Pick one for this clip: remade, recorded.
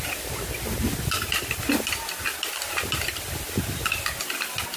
recorded